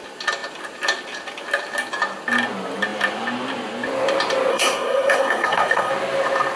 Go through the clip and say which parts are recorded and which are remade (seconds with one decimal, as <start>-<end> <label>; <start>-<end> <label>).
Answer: 0.0-4.5 recorded; 4.5-5.9 remade; 5.9-6.6 recorded